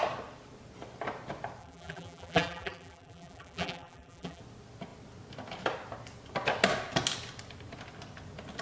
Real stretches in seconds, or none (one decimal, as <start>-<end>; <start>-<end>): 0.0-1.6; 4.4-8.6